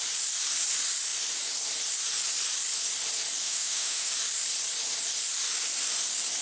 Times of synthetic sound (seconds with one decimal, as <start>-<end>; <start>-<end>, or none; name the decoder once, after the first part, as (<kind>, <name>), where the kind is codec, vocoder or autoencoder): 3.4-4.1 (autoencoder, DAC-VAE)